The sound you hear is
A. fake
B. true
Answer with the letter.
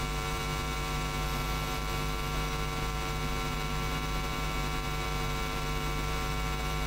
A